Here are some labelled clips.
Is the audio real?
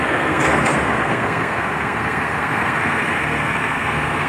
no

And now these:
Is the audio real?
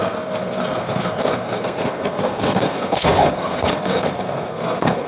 no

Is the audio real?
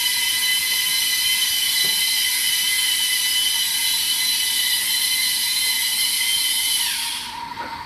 yes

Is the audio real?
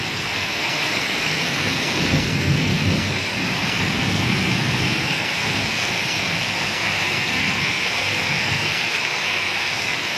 no